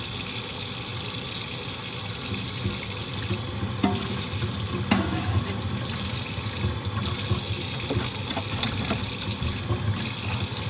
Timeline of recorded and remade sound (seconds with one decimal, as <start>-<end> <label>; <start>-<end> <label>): 0.0-10.7 recorded